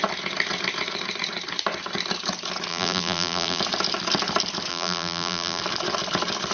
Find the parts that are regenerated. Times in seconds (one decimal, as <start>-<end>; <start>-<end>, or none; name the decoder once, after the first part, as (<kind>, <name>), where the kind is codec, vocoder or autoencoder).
2.7-3.6 (vocoder, BigVGAN v2); 4.7-5.6